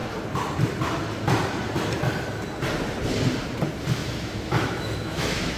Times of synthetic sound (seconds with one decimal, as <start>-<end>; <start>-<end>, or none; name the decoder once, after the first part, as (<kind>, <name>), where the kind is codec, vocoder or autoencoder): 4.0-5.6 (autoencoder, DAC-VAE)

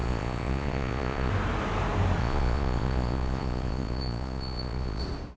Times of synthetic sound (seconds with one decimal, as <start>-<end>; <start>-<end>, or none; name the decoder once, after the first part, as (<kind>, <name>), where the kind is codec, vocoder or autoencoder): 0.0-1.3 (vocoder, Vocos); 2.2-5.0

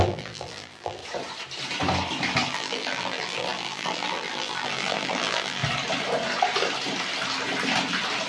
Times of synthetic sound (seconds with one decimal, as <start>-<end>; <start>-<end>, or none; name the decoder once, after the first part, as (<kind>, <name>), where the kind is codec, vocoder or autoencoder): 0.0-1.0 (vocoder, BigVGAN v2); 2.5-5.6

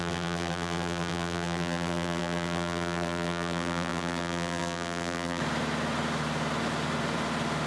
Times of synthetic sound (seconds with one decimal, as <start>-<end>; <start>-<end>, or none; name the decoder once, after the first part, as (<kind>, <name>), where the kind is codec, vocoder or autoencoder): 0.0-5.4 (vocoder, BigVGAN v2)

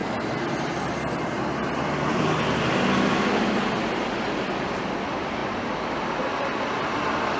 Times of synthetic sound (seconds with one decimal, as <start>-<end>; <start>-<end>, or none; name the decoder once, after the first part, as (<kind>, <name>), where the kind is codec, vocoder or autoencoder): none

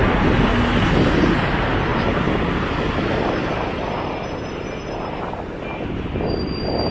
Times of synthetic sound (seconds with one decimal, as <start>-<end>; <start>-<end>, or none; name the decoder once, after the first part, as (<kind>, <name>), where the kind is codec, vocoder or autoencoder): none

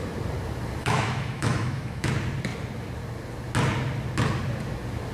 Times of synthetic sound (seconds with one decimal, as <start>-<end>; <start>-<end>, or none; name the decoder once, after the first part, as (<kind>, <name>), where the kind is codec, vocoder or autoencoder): 0.8-2.1 (autoencoder, DAC-VAE)